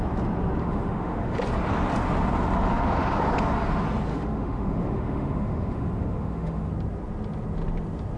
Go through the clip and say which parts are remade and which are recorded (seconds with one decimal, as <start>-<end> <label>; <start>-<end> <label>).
0.0-0.6 recorded; 0.6-1.4 remade; 1.4-2.7 recorded; 2.7-3.2 remade; 3.2-4.1 recorded; 4.1-6.7 remade; 6.7-8.2 recorded